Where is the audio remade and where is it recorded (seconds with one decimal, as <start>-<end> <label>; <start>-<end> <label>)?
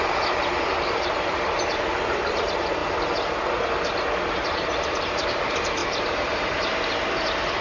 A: 0.0-2.8 remade; 2.8-4.3 recorded; 4.3-7.6 remade